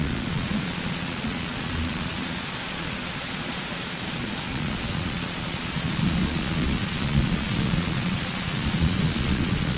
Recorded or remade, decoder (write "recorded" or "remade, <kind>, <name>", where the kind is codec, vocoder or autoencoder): remade, vocoder, Vocos